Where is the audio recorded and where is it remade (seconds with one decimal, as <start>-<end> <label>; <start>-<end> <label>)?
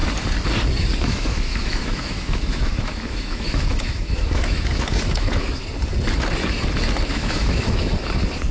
0.0-1.0 recorded; 1.0-5.6 remade; 5.6-7.1 recorded; 7.1-7.9 remade; 7.9-8.5 recorded